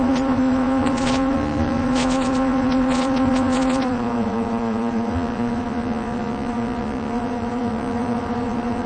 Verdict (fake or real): fake